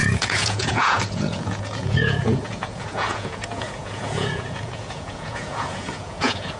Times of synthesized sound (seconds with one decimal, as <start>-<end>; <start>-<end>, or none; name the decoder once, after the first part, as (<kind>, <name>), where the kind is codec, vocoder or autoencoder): 0.0-6.6 (vocoder, Vocos)